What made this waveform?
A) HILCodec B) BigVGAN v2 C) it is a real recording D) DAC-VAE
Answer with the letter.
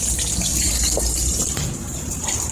C